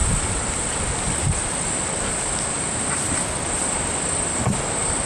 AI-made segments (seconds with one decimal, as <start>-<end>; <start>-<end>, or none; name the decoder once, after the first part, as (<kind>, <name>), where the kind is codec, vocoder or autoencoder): 0.0-3.1 (vocoder, BigVGAN v2)